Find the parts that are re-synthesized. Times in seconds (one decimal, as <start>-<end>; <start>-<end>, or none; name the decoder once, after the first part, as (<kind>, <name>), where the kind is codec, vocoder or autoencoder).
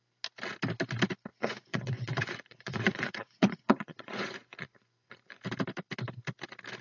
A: 1.3-5.4 (vocoder, Vocos)